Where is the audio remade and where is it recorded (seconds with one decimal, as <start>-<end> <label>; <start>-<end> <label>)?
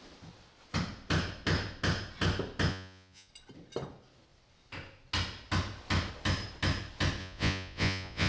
0.0-2.7 recorded; 2.7-3.3 remade; 3.3-7.2 recorded; 7.2-8.3 remade